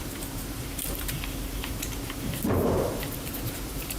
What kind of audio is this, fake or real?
fake